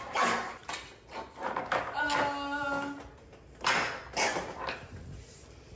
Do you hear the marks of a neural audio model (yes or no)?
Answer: no